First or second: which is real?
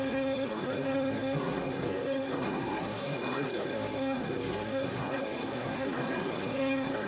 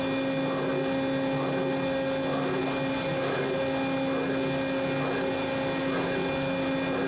second